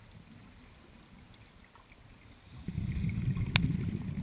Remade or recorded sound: recorded